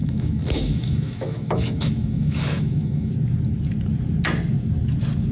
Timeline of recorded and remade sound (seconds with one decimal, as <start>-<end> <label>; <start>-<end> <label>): 0.0-3.1 remade; 3.1-5.3 recorded